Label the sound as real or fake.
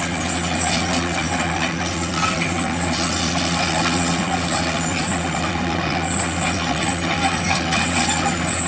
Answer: fake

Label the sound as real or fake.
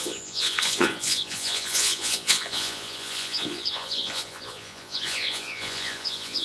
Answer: fake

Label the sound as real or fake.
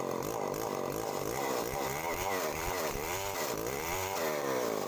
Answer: fake